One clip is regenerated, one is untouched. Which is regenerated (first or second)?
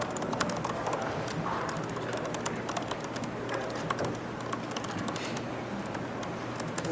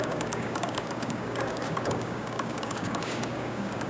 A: second